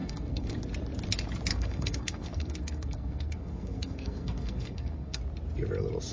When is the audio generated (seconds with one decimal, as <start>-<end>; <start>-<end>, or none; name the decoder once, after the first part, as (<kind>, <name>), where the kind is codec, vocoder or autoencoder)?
0.0-0.6 (codec, SNAC); 1.5-5.2